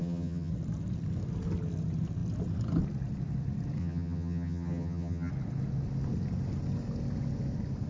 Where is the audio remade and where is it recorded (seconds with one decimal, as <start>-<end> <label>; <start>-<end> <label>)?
0.0-0.5 remade; 0.5-3.8 recorded; 3.8-5.3 remade; 5.3-7.9 recorded